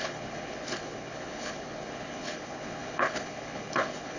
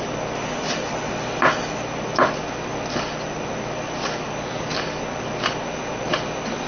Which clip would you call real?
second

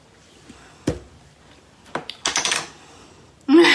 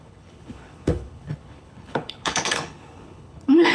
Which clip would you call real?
first